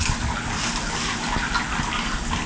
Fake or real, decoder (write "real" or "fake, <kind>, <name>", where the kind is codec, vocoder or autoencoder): real